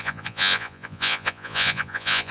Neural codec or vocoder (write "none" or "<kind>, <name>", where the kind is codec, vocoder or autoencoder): vocoder, Vocos